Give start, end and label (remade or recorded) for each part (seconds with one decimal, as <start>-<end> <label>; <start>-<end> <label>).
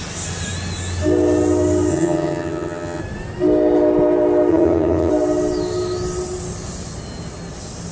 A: 0.0-1.9 recorded; 1.9-3.0 remade; 3.0-4.5 recorded; 4.5-5.1 remade; 5.1-7.9 recorded